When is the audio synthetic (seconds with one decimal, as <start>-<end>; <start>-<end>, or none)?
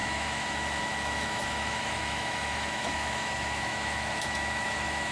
0.0-5.1